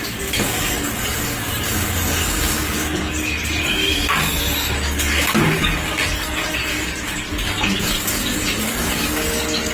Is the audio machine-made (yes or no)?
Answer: yes